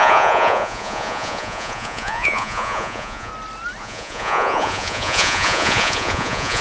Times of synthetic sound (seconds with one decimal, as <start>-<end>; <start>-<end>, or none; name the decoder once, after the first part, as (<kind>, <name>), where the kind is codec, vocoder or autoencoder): 0.0-3.3 (vocoder, Vocos); 3.8-6.6